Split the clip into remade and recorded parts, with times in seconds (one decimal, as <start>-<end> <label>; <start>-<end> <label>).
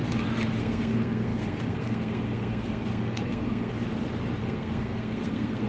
0.0-0.6 recorded; 0.6-3.7 remade; 3.7-4.4 recorded; 4.4-5.7 remade